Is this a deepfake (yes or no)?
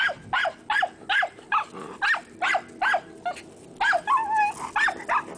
no